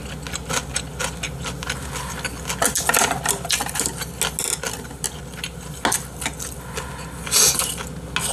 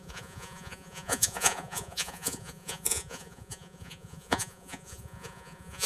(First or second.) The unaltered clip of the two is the first